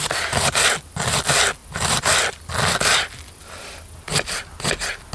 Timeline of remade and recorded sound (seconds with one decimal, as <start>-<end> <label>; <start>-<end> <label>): 0.0-5.1 recorded